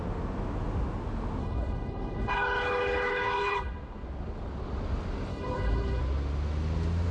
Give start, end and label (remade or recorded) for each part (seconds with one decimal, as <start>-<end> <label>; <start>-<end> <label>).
0.0-1.4 recorded; 1.4-3.7 remade; 3.7-5.3 recorded; 5.3-6.0 remade; 6.0-7.1 recorded